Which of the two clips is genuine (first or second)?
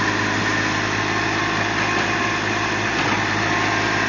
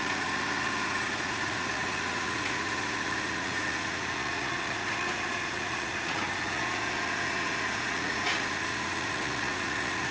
first